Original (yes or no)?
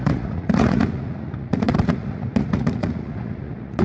no